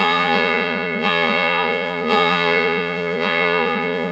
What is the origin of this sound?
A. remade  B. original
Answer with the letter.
A